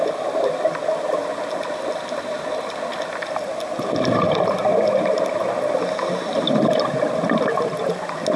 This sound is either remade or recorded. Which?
recorded